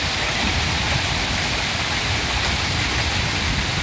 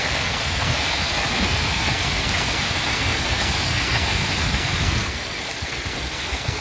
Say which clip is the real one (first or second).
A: first